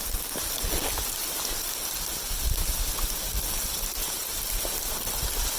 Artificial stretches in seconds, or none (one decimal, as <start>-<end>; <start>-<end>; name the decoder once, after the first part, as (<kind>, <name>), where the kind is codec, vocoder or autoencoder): none